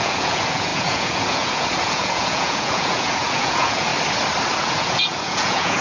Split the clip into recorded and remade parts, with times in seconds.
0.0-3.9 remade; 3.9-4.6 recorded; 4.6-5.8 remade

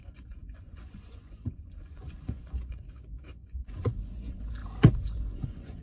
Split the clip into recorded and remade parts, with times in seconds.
0.0-5.8 remade

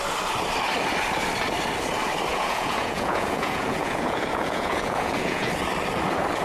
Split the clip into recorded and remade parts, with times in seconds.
0.0-2.3 recorded; 2.3-5.5 remade; 5.5-6.4 recorded

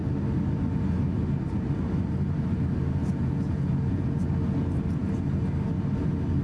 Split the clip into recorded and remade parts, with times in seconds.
0.0-3.0 recorded; 3.0-4.3 remade; 4.3-6.4 recorded

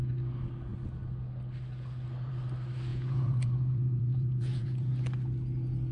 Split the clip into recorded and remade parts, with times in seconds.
0.0-2.9 recorded; 2.9-4.9 remade; 4.9-5.9 recorded

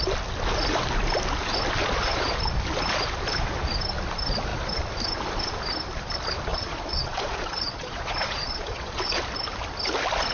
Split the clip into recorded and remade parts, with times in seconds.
0.0-1.8 recorded; 1.8-2.4 remade; 2.4-6.5 recorded; 6.5-9.2 remade; 9.2-10.3 recorded